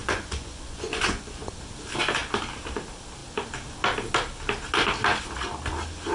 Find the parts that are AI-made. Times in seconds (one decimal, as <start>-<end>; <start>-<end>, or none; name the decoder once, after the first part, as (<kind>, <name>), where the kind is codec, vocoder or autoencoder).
0.0-1.5 (vocoder, Vocos)